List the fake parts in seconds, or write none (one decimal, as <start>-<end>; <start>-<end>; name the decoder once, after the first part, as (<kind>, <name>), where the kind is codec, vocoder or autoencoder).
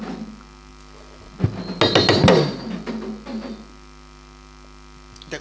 none